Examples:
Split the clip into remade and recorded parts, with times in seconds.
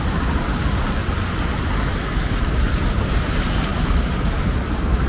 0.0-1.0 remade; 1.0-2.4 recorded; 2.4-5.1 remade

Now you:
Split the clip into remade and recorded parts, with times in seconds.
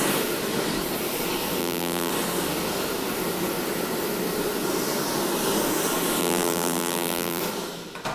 0.0-1.6 recorded; 1.6-2.1 remade; 2.1-6.2 recorded; 6.2-7.4 remade; 7.4-8.1 recorded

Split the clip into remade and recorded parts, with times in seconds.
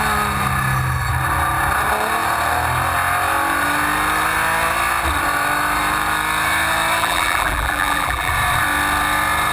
0.0-7.0 recorded; 7.0-8.3 remade; 8.3-9.5 recorded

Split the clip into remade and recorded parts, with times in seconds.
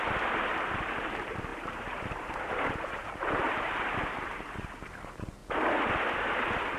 0.0-5.4 remade; 5.4-6.2 recorded; 6.2-6.8 remade